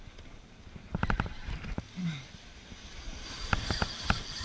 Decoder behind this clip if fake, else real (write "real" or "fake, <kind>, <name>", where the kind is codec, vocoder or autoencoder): real